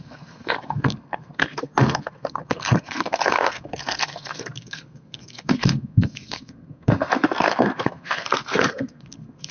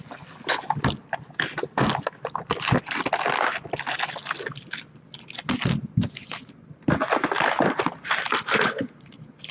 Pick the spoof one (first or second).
first